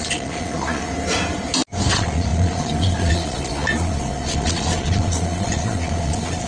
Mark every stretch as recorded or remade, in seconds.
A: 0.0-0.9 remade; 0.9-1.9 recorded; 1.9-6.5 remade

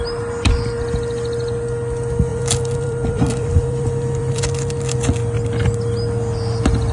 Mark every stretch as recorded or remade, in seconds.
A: 0.0-2.3 recorded; 2.3-4.4 remade; 4.4-6.9 recorded